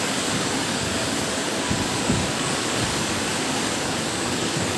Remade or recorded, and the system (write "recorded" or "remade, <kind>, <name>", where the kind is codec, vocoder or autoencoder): remade, codec, DAC